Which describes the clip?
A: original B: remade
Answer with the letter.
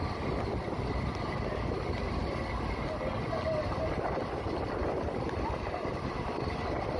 A